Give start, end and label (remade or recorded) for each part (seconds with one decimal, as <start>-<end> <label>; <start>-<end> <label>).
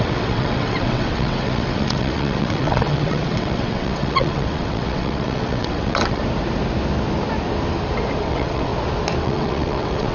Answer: 0.0-6.2 remade; 6.2-8.2 recorded; 8.2-8.7 remade; 8.7-9.2 recorded; 9.2-10.1 remade